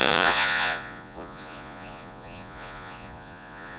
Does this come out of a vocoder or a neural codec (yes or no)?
yes